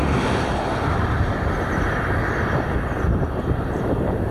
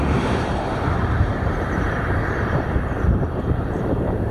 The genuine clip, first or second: first